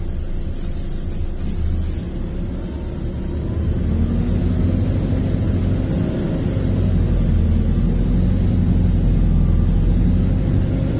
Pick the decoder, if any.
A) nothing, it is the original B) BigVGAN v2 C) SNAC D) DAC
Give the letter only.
A